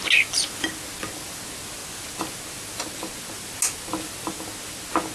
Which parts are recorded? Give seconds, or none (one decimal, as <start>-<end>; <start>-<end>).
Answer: 0.0-5.1

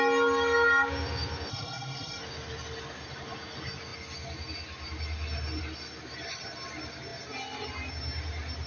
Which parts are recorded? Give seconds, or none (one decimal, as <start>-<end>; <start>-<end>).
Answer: 0.0-1.5; 2.2-8.7

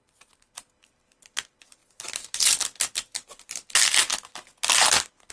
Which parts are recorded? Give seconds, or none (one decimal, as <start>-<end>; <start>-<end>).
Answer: 0.0-5.3

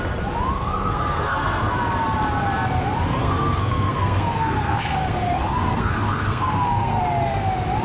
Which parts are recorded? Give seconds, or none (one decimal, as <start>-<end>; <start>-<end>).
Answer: 0.0-0.5; 1.7-3.1; 7.0-7.8

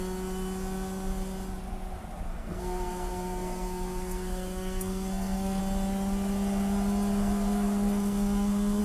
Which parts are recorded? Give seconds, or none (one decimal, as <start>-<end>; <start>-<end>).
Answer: 0.0-2.3; 5.6-7.2

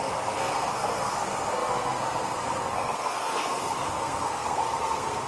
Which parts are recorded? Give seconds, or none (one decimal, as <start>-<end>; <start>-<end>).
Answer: none

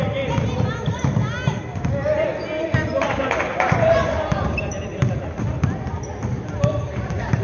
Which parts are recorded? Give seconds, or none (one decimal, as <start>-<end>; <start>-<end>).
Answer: 0.0-7.4